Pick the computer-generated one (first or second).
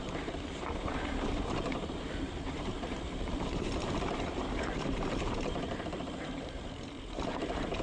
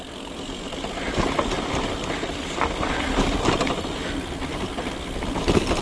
first